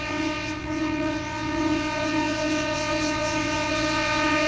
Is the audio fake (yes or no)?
yes